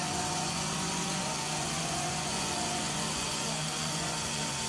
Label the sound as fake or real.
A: fake